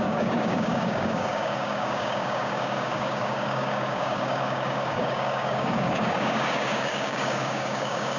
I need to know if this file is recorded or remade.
remade